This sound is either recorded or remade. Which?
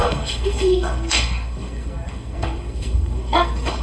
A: remade